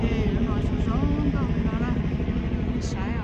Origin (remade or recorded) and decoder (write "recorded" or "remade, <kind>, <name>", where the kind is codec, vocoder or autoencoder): recorded